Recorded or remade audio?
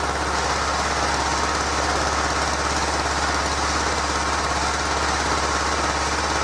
recorded